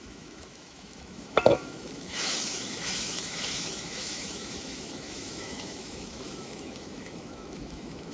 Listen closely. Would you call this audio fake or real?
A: fake